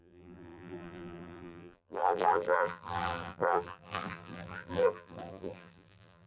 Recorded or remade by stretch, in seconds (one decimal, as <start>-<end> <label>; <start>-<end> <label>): 0.0-6.3 remade